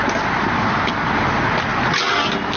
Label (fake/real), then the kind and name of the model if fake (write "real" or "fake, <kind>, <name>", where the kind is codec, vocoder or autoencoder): real